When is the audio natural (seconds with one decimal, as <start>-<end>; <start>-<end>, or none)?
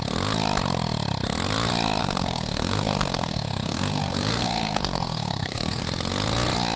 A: 0.0-2.0; 5.8-6.8